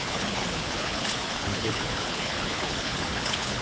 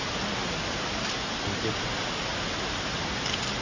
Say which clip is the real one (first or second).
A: second